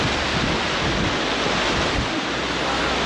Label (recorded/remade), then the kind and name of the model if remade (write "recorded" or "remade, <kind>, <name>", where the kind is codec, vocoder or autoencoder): recorded